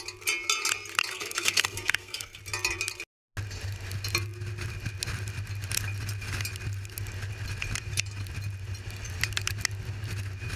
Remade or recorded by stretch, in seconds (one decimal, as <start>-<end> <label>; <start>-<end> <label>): 0.0-1.1 recorded; 1.1-2.4 remade; 2.4-10.6 recorded

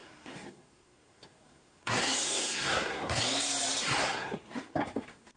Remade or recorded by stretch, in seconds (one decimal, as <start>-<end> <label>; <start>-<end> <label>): 0.0-3.2 remade; 3.2-4.0 recorded; 4.0-5.4 remade

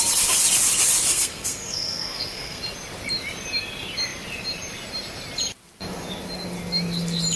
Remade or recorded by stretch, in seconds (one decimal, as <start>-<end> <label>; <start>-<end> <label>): 0.0-1.1 recorded; 1.1-2.6 remade; 2.6-7.4 recorded

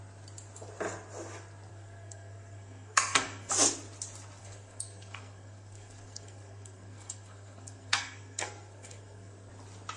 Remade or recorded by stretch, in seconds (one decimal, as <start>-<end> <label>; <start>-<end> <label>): 0.0-1.7 recorded; 1.7-3.5 remade; 3.5-4.4 recorded; 4.4-9.5 remade; 9.5-10.0 recorded

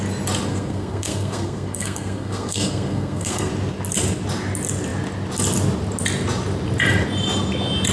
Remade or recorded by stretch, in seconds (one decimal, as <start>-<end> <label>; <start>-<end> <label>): 0.0-0.5 recorded; 0.5-3.5 remade; 3.5-7.9 recorded

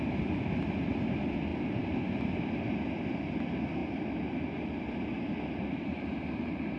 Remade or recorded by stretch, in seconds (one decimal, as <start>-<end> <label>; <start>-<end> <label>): 0.0-6.8 recorded